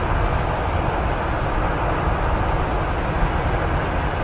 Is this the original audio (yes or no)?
yes